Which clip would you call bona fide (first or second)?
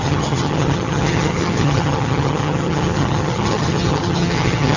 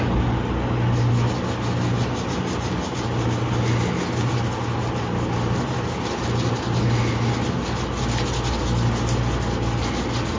second